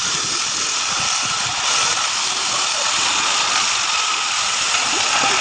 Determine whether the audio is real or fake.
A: real